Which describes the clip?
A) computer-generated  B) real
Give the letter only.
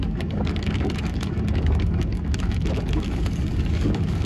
A